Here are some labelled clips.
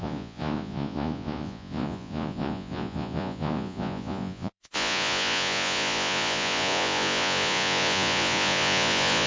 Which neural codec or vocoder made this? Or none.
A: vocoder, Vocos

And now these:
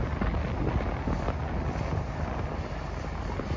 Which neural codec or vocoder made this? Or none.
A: none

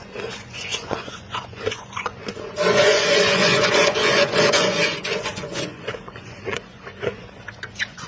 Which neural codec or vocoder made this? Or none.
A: vocoder, Vocos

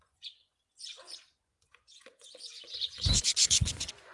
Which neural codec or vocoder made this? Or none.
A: vocoder, Vocos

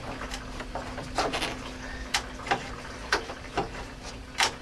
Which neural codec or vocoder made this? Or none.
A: none